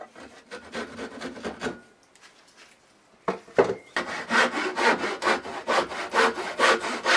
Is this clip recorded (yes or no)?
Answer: yes